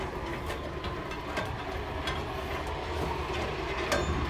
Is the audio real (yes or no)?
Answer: yes